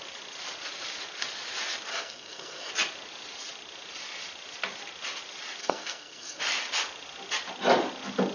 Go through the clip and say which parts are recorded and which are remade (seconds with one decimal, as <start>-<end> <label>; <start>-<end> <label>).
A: 0.0-1.9 recorded; 1.9-2.7 remade; 2.7-5.6 recorded; 5.6-6.4 remade; 6.4-8.3 recorded